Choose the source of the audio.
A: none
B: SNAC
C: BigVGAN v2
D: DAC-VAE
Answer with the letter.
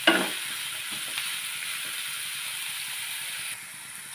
A